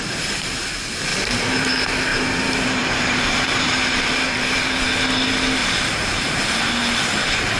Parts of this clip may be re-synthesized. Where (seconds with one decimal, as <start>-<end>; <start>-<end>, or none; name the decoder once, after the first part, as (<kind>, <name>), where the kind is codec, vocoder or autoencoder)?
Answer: 1.1-1.7 (vocoder, BigVGAN v2); 2.1-4.8; 5.6-6.3